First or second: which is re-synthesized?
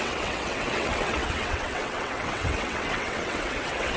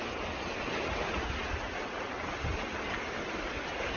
first